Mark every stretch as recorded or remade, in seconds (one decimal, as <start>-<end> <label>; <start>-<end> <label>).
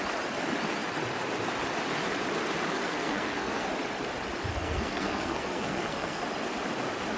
0.0-2.7 recorded; 2.7-3.7 remade; 3.7-4.5 recorded; 4.5-6.2 remade; 6.2-7.2 recorded